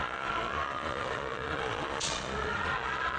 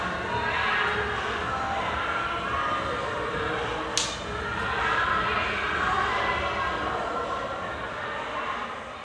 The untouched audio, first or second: second